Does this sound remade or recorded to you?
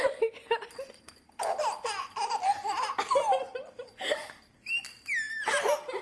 recorded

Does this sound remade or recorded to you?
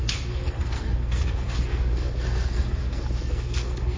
remade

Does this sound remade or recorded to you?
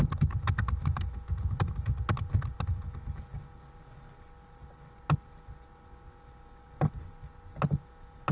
recorded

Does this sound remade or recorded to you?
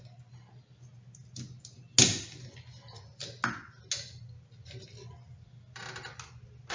recorded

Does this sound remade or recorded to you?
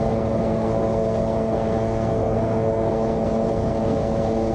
remade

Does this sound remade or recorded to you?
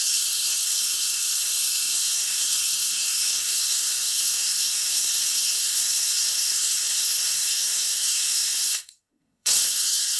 remade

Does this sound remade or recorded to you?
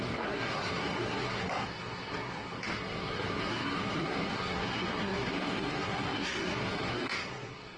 remade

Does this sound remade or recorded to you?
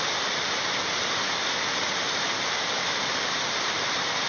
recorded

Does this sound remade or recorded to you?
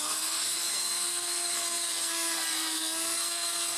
remade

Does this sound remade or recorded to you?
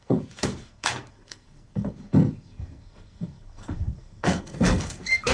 remade